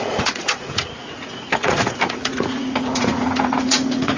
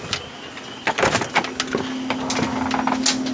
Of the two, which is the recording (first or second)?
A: second